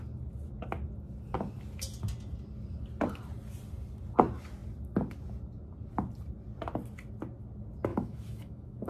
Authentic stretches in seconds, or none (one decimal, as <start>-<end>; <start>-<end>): 0.0-7.9